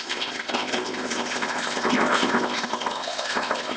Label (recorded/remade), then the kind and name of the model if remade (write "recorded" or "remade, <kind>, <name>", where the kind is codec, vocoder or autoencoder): remade, codec, ZipCodec